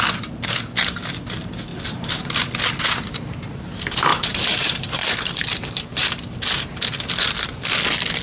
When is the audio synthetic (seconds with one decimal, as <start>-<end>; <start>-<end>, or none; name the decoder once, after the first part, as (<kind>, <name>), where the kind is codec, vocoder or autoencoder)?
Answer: 1.7-2.4 (vocoder, BigVGAN v2); 4.1-5.4